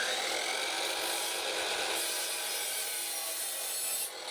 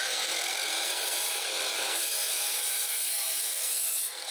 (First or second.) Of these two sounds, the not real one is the second